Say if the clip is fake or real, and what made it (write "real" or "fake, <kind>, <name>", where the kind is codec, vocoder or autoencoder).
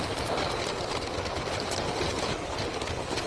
real